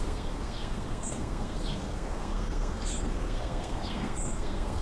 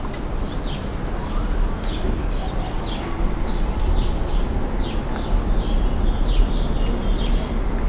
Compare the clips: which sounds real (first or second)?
second